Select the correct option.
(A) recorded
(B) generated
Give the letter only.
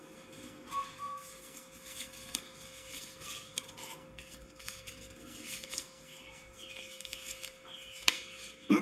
B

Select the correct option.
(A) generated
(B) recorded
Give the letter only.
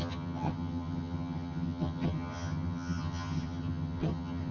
A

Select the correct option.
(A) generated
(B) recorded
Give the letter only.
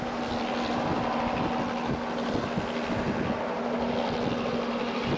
B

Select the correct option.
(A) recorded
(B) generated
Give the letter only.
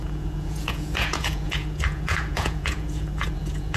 B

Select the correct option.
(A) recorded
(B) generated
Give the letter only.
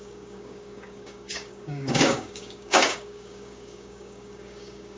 B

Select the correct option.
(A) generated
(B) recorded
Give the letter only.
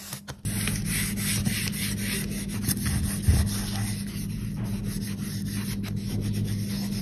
B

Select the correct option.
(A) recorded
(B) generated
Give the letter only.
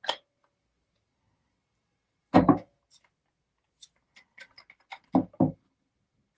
A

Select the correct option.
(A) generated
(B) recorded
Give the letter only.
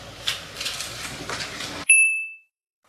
A